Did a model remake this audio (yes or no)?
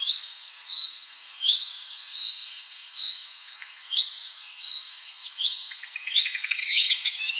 yes